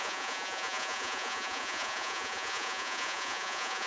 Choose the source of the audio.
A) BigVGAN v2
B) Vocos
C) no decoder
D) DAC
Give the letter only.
B